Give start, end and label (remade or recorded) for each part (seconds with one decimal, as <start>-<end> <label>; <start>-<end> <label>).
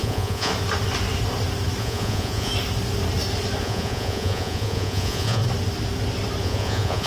0.0-0.5 remade; 0.5-1.8 recorded; 1.8-2.5 remade; 2.5-3.6 recorded; 3.6-5.4 remade; 5.4-6.4 recorded; 6.4-7.1 remade